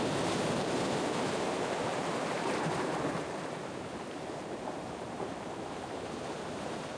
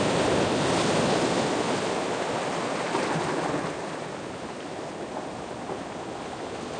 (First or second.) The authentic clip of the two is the second